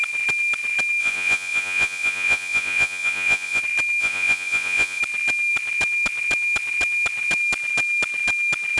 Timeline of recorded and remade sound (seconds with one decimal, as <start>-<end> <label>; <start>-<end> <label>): 0.0-1.0 recorded; 1.0-3.6 remade; 3.6-4.0 recorded; 4.0-5.0 remade; 5.0-8.8 recorded

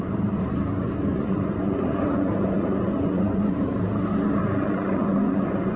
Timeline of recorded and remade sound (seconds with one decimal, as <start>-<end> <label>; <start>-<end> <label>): 0.0-1.1 recorded; 1.1-3.4 remade; 3.4-4.4 recorded; 4.4-5.8 remade

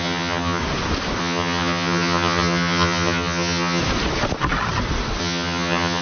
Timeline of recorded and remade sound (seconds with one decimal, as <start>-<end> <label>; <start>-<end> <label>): 0.0-0.6 remade; 0.6-1.2 recorded; 1.2-3.8 remade; 3.8-5.2 recorded; 5.2-6.0 remade

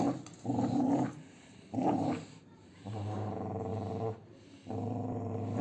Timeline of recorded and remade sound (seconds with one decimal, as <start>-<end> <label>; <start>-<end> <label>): 0.0-5.6 remade

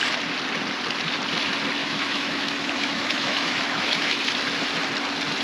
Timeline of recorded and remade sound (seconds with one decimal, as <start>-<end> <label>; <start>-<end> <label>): 0.0-1.8 recorded; 1.8-4.2 remade; 4.2-5.4 recorded

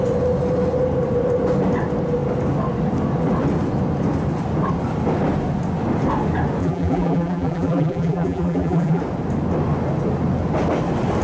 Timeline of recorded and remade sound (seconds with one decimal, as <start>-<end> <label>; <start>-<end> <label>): 0.0-6.6 recorded; 6.6-9.0 remade; 9.0-11.2 recorded

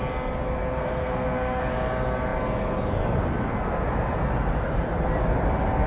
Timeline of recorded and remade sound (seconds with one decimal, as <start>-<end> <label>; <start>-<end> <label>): 0.0-0.8 recorded; 0.8-1.6 remade; 1.6-5.9 recorded

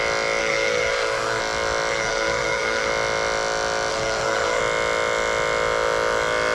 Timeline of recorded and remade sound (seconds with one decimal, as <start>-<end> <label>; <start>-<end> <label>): 0.0-0.4 recorded; 0.4-1.4 remade; 1.4-1.9 recorded; 1.9-2.9 remade; 2.9-3.9 recorded; 3.9-4.6 remade; 4.6-6.5 recorded